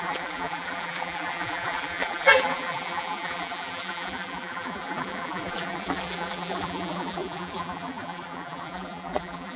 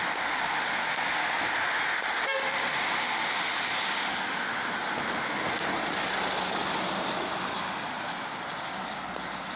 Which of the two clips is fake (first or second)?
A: first